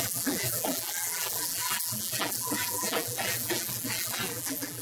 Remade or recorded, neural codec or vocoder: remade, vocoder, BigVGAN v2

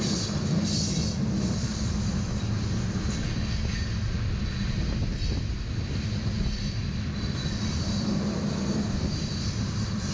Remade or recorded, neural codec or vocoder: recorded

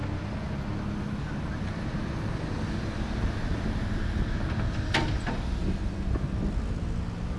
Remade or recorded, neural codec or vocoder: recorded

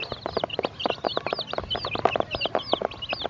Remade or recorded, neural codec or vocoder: recorded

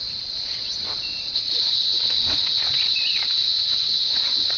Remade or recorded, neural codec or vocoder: remade, vocoder, Vocos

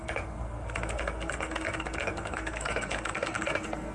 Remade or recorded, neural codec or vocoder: remade, codec, SNAC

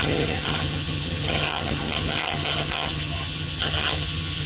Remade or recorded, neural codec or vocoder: remade, vocoder, HiFi-GAN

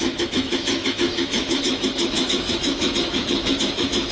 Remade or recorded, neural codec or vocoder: remade, autoencoder, DAC-VAE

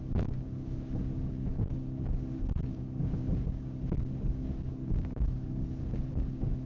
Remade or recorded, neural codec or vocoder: remade, codec, DAC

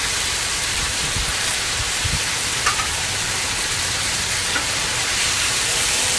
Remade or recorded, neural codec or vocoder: remade, vocoder, BigVGAN v2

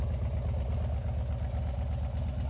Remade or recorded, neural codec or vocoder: recorded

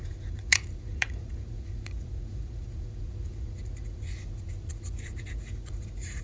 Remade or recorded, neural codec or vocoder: remade, vocoder, Vocos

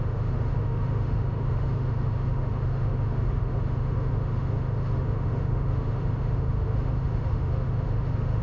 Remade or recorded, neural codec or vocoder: remade, autoencoder, DAC-VAE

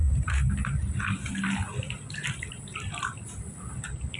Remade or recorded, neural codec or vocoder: recorded